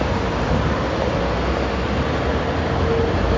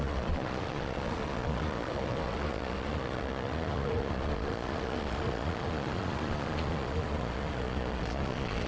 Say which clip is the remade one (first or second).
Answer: second